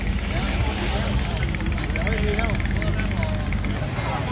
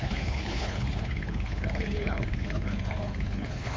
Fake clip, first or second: second